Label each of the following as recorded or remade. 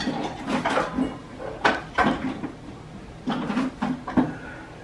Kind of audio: recorded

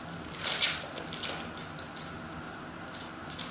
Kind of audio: recorded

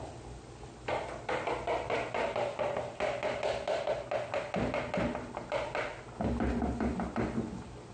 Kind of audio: recorded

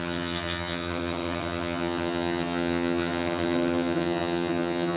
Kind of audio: remade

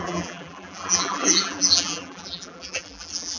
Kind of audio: remade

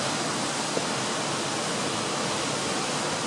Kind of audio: recorded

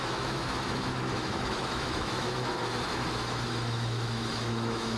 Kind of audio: remade